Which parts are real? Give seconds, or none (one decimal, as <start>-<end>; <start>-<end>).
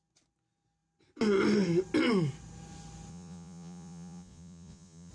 0.0-3.1